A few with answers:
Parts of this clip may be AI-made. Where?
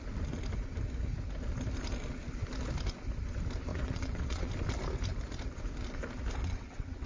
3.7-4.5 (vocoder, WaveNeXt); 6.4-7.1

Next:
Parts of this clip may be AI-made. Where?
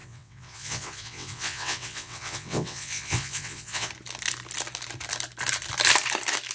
0.0-3.9 (vocoder, WaveNeXt)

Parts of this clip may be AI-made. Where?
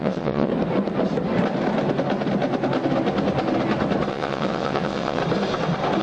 0.0-0.5 (vocoder, WaveNeXt); 4.1-5.2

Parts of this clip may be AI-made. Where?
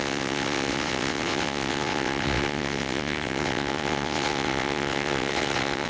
0.0-5.9 (vocoder, WaveNeXt)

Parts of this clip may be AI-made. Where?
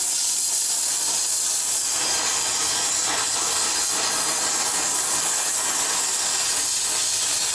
none